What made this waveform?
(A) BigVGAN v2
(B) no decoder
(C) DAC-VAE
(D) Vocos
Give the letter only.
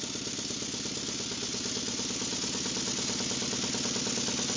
B